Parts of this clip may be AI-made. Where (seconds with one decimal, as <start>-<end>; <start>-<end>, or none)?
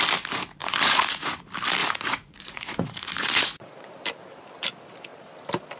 0.6-1.4; 1.8-3.9